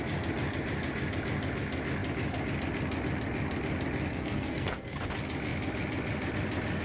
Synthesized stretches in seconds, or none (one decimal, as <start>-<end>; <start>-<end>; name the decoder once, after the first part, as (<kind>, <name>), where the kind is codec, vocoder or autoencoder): 4.1-5.0 (codec, SNAC)